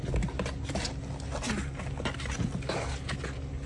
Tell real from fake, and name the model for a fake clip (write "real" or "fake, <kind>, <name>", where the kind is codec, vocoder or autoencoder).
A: real